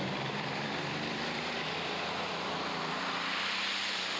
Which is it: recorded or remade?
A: remade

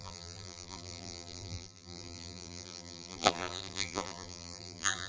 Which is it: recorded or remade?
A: remade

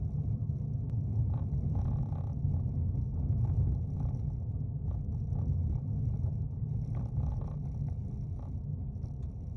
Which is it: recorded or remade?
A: recorded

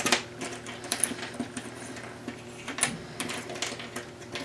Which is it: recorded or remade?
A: recorded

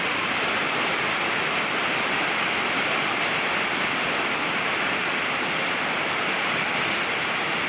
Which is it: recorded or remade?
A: recorded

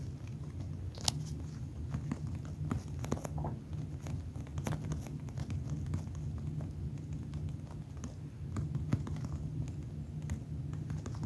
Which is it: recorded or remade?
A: recorded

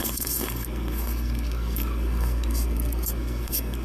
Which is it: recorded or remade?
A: remade